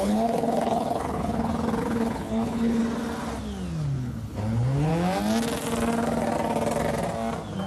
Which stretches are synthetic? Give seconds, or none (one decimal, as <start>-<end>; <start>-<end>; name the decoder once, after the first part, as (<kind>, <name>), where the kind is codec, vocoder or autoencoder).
0.0-2.8 (codec, HILCodec); 4.0-4.9